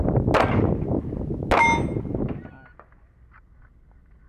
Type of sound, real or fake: real